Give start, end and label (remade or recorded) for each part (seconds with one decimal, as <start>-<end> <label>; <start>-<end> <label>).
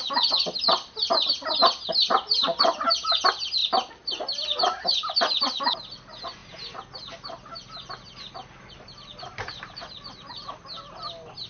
0.0-1.6 recorded; 1.6-2.6 remade; 2.6-9.3 recorded; 9.3-10.5 remade; 10.5-11.5 recorded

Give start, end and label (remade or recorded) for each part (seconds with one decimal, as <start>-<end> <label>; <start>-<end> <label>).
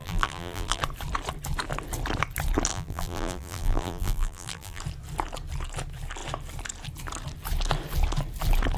0.0-0.8 remade; 0.8-2.7 recorded; 2.7-4.8 remade; 4.8-8.8 recorded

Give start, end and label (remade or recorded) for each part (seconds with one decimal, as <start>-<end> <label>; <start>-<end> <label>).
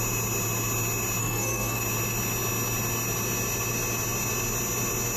0.0-1.2 recorded; 1.2-1.8 remade; 1.8-5.2 recorded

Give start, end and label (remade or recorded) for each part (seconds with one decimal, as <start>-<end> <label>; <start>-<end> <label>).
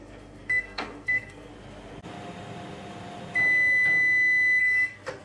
0.0-1.5 remade; 1.5-4.6 recorded; 4.6-5.2 remade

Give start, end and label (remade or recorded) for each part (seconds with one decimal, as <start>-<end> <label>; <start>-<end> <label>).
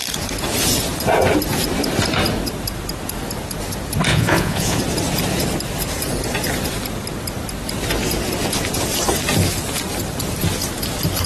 0.0-4.1 recorded; 4.1-4.8 remade; 4.8-11.3 recorded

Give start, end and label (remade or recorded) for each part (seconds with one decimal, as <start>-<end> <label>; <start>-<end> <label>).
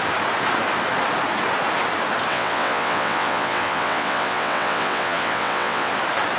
0.0-2.3 recorded; 2.3-5.9 remade; 5.9-6.4 recorded